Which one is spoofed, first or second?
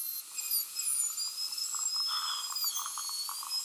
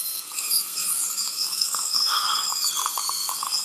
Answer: second